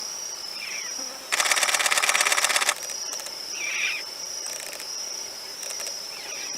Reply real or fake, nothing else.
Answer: fake